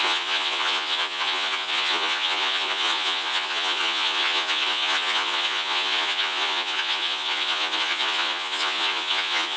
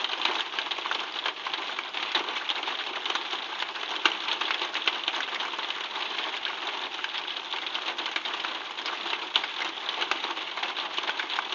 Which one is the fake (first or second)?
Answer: first